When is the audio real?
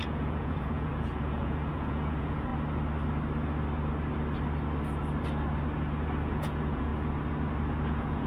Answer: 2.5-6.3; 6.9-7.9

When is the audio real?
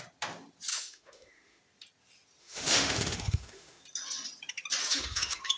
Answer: 0.0-0.7; 1.6-2.4; 3.8-4.8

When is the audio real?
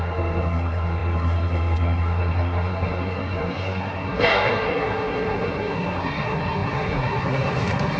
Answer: none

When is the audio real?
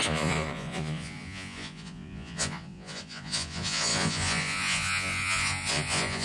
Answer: none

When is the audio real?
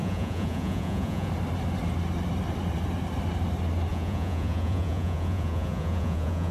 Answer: 1.3-3.9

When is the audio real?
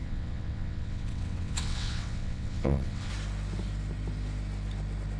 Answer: 3.1-5.2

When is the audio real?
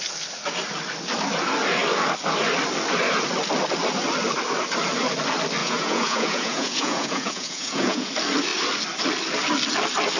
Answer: 0.0-5.6; 8.1-10.2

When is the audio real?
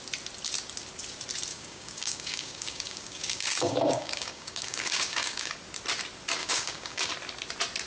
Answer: 0.0-1.5; 5.5-6.4; 7.1-7.9